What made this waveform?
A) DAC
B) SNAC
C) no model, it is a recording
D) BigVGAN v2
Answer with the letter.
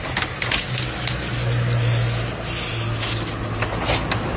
C